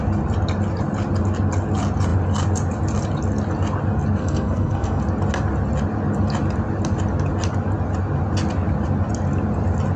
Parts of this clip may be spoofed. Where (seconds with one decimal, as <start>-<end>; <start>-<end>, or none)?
4.2-5.0